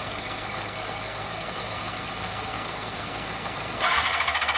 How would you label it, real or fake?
fake